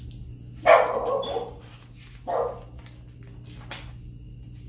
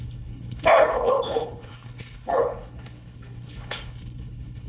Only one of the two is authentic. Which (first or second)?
first